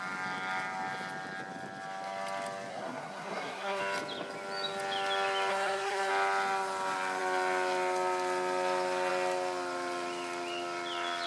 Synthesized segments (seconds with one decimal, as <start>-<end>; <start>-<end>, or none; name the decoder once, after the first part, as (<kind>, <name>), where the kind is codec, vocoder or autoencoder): 2.7-3.8 (codec, SNAC); 5.5-6.1